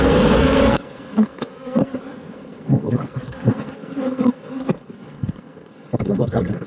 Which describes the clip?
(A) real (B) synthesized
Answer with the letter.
B